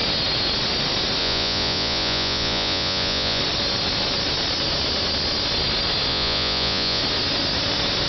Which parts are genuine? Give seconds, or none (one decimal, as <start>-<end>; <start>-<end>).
0.0-1.2; 3.4-6.1; 7.0-8.1